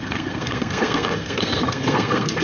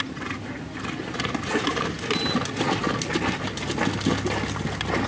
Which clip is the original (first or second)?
second